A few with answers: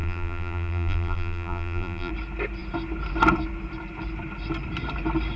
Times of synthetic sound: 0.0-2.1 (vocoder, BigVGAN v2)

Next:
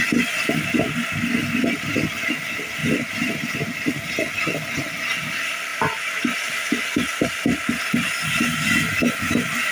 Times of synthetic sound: 2.8-4.3 (vocoder, BigVGAN v2); 5.7-6.7

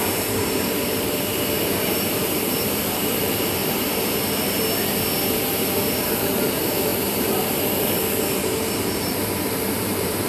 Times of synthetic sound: 0.0-3.6 (vocoder, BigVGAN v2); 5.3-10.3

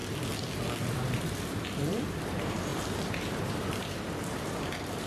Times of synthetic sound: 0.8-5.1 (vocoder, BigVGAN v2)

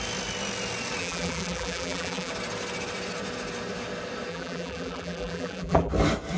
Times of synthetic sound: 1.0-2.3 (vocoder, BigVGAN v2); 4.3-5.9